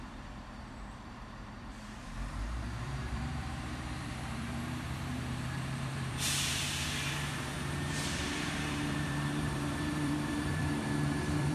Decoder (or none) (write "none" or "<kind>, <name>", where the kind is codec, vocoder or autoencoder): vocoder, BigVGAN v2